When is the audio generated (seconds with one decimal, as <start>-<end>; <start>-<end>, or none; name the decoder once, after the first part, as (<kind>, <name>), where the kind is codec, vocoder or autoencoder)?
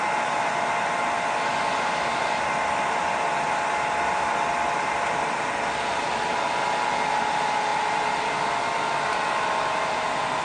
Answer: none